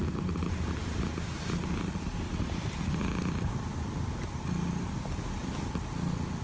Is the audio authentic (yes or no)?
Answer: yes